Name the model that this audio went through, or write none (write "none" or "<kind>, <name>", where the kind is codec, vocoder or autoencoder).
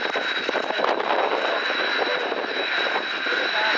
none